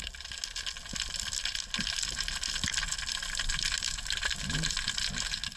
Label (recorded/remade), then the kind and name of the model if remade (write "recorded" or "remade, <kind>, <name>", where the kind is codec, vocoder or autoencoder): recorded